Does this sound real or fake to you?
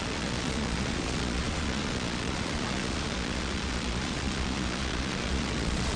fake